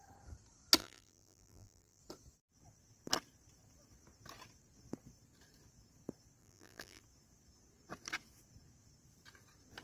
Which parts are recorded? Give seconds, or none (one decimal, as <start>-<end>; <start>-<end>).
0.0-0.8; 2.0-6.4; 7.0-9.8

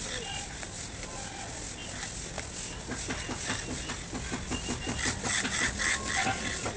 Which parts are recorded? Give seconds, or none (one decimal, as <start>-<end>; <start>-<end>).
0.0-6.8

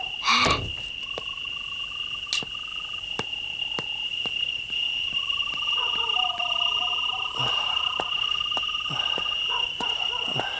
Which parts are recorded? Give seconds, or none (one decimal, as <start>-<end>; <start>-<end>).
0.0-4.1; 8.9-10.6